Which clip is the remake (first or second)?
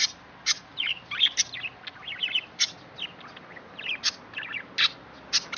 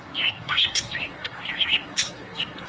second